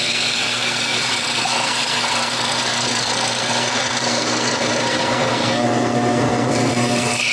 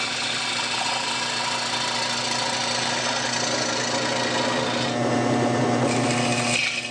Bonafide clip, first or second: second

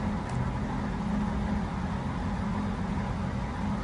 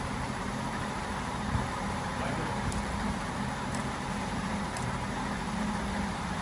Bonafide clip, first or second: first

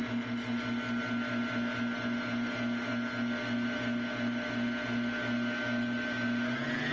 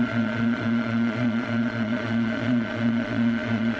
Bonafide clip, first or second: first